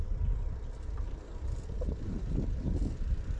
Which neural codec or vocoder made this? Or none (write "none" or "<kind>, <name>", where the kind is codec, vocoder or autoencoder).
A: none